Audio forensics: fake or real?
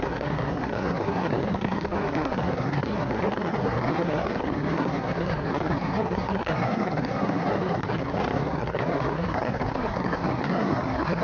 fake